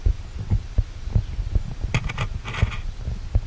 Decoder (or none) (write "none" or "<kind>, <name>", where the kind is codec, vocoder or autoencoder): none